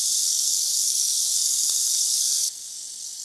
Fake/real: fake